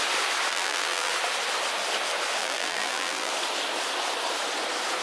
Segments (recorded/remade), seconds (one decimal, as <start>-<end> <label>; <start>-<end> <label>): 0.0-0.5 recorded; 0.5-1.1 remade; 1.1-2.4 recorded; 2.4-3.3 remade; 3.3-5.0 recorded